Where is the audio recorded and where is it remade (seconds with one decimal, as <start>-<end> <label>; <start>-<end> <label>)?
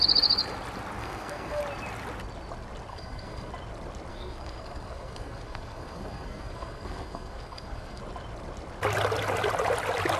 0.0-1.0 recorded; 1.0-1.6 remade; 1.6-2.9 recorded; 2.9-3.5 remade; 3.5-4.1 recorded; 4.1-8.0 remade; 8.0-10.2 recorded